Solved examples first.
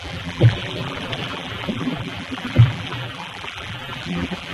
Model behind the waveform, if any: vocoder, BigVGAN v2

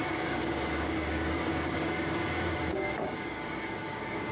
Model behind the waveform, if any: codec, DAC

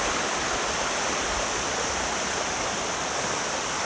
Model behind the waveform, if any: none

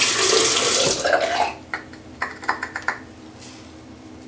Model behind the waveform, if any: none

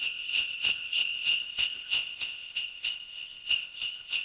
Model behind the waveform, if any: codec, ZipCodec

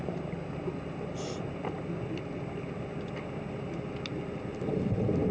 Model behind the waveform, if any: none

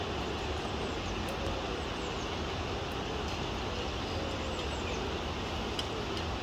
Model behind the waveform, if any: none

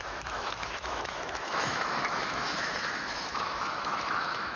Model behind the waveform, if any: autoencoder, DAC-VAE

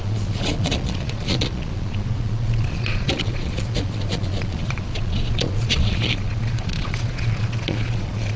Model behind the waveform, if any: vocoder, Vocos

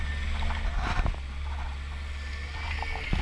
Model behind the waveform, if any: none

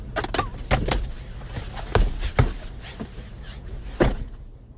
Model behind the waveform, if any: none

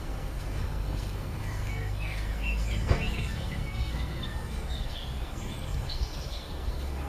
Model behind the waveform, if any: codec, SNAC